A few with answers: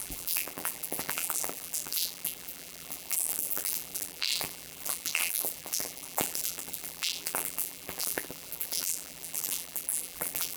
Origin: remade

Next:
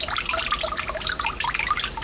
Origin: recorded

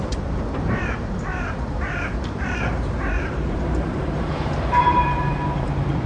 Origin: remade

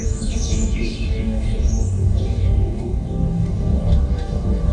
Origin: remade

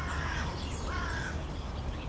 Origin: recorded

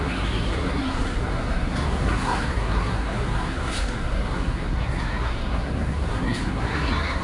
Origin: remade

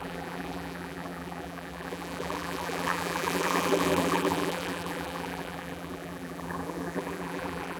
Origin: remade